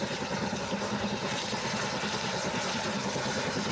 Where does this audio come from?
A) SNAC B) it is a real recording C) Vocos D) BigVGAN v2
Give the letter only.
B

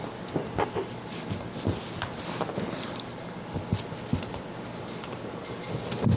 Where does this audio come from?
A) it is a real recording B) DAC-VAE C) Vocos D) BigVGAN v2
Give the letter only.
A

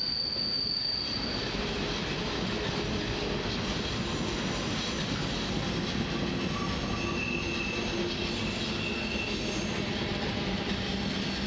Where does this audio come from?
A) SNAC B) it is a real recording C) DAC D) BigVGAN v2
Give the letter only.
B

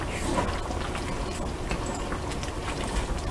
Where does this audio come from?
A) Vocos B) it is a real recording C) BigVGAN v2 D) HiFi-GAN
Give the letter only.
B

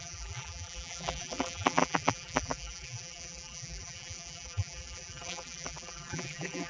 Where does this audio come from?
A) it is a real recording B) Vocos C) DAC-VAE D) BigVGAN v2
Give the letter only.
D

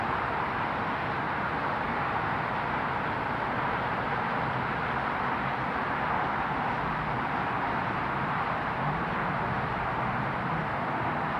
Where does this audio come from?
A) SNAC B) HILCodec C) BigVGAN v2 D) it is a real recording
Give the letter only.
D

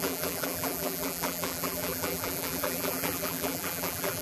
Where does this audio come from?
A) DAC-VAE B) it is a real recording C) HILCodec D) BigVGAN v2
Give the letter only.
D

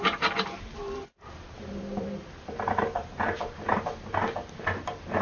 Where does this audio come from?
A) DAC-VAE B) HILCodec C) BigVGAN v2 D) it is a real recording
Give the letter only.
C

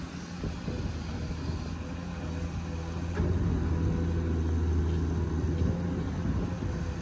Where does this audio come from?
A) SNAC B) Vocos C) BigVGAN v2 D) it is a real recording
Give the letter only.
D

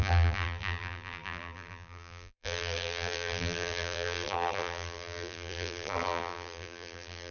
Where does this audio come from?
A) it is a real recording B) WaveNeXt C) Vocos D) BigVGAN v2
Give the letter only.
D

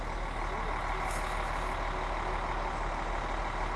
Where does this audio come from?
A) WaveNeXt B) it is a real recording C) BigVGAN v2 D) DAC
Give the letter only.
B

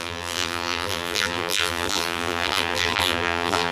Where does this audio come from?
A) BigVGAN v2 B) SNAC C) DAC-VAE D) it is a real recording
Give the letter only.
A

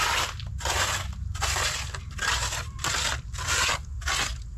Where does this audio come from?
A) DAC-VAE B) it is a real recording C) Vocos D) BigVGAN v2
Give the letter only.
B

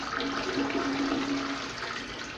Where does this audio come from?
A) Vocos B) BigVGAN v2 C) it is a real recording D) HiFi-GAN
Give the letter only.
C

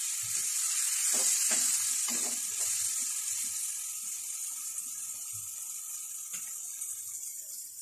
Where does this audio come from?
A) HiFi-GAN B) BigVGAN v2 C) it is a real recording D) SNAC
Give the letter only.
C